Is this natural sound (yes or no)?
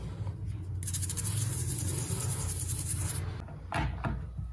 yes